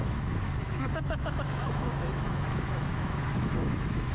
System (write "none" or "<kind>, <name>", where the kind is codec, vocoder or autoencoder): autoencoder, DAC-VAE